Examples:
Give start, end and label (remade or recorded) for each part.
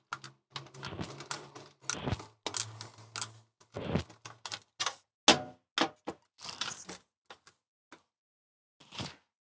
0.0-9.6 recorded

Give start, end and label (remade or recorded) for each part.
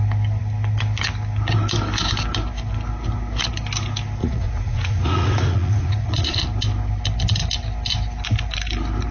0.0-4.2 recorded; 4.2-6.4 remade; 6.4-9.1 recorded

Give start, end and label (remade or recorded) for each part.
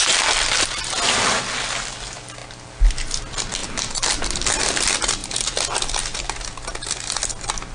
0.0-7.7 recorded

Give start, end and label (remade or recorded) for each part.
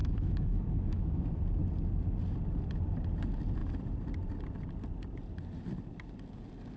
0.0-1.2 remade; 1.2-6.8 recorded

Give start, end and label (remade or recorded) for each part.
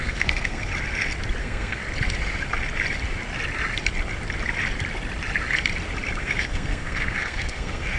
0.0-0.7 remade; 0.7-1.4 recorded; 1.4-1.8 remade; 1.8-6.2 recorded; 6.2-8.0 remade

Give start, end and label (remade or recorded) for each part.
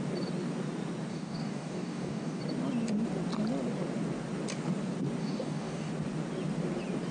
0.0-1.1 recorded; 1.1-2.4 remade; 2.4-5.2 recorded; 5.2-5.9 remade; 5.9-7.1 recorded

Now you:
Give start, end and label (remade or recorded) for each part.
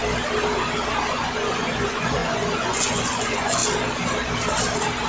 0.0-1.1 recorded; 1.1-3.6 remade; 3.6-5.1 recorded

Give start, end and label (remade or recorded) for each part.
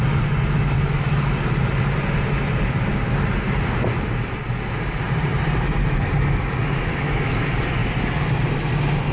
0.0-9.1 recorded